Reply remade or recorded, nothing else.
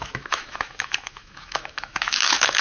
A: remade